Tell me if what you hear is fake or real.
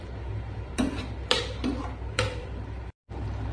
fake